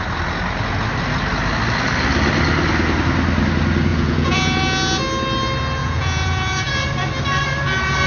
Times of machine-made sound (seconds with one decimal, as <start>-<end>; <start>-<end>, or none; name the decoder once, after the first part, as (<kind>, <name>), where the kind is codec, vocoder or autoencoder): 3.9-4.6 (vocoder, Vocos); 5.8-6.7